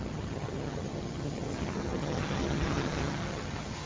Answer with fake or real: fake